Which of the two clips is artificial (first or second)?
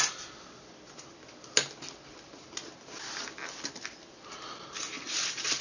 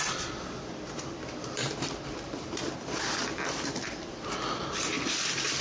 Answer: second